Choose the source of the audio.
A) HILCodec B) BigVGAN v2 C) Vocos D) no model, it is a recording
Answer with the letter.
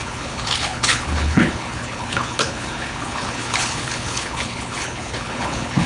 A